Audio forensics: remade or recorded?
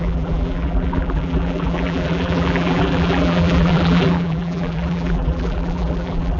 remade